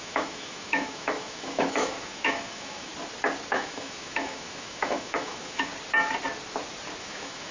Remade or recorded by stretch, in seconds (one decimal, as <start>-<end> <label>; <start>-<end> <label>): 0.0-2.9 remade; 2.9-3.5 recorded; 3.5-5.7 remade; 5.7-7.0 recorded; 7.0-7.5 remade